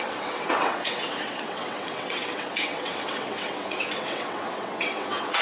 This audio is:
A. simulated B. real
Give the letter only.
A